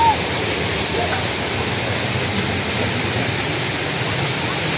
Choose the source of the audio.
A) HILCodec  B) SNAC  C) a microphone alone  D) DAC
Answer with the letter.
C